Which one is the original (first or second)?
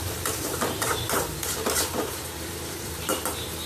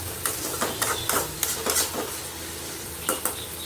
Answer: second